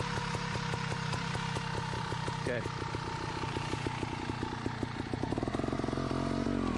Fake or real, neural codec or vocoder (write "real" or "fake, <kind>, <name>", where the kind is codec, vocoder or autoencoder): real